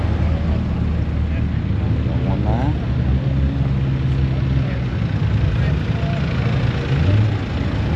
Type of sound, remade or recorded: recorded